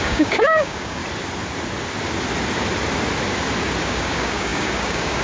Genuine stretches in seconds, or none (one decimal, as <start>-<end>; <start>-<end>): 1.0-3.8